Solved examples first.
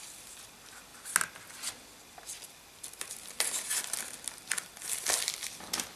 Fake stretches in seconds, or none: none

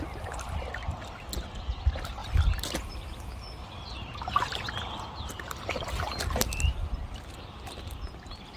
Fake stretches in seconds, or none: none

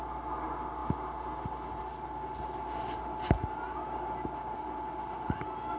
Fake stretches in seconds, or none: none

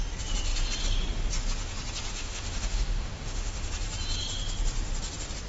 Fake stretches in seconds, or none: 2.1-3.7 (autoencoder, DAC-VAE)